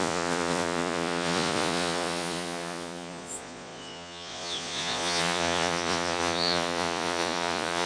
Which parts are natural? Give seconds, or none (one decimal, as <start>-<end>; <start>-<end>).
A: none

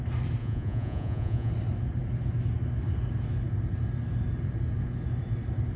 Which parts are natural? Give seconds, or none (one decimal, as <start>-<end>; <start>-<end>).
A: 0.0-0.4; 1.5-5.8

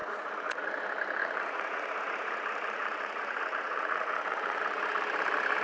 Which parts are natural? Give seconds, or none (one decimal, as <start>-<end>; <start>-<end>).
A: 0.7-1.2; 4.6-5.6